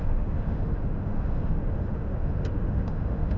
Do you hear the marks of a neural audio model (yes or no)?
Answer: yes